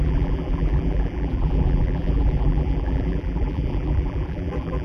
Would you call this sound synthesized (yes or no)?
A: yes